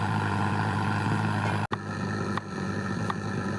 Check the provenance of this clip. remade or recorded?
recorded